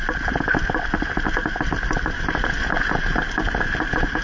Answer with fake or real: real